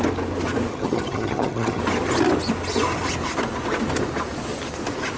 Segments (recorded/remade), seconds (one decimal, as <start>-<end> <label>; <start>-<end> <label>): 0.0-0.7 recorded; 0.7-1.8 remade; 1.8-5.2 recorded